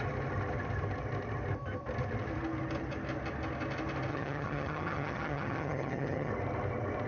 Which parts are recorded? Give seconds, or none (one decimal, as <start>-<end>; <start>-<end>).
0.0-4.1; 6.3-7.1